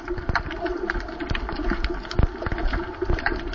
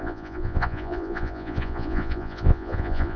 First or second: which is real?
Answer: first